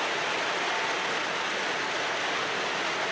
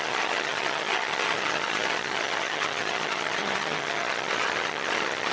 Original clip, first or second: first